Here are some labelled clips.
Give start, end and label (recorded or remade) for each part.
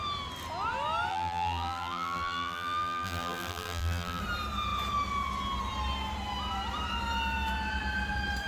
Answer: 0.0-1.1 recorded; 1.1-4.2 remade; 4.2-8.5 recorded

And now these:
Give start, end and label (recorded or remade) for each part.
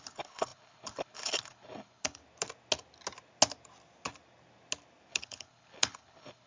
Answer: 0.0-2.2 remade; 2.2-5.1 recorded; 5.1-6.5 remade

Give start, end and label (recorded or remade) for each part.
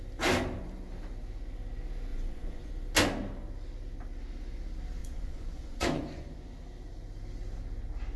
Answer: 0.0-2.1 recorded; 2.1-2.7 remade; 2.7-5.0 recorded; 5.0-6.3 remade; 6.3-8.2 recorded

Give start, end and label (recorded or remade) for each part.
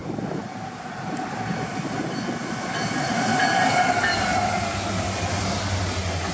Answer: 0.0-6.3 recorded